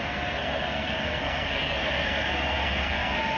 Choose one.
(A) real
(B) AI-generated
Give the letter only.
B